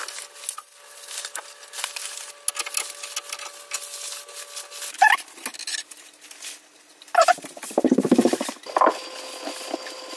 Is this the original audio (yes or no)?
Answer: yes